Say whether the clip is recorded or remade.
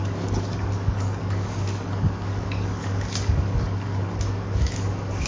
remade